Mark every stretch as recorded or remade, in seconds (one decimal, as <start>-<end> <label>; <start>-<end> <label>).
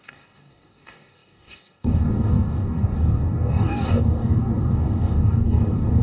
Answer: 0.0-6.0 remade